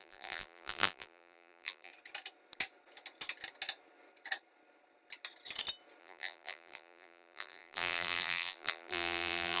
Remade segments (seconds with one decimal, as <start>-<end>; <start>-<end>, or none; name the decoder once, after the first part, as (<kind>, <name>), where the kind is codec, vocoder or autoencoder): 0.0-1.9 (vocoder, BigVGAN v2); 6.0-9.6